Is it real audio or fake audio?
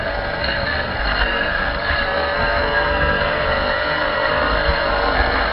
fake